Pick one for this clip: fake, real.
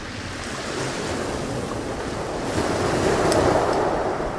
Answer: real